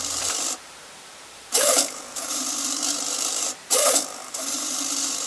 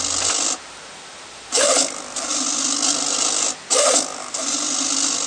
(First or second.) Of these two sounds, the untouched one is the second